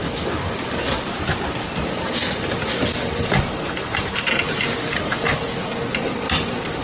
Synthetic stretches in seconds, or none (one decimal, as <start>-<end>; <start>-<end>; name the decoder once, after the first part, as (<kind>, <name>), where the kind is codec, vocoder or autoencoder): 2.2-4.3 (vocoder, BigVGAN v2)